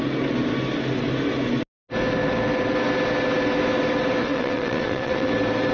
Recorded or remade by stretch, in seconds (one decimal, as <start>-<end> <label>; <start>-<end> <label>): 0.0-4.2 recorded; 4.2-5.3 remade; 5.3-5.7 recorded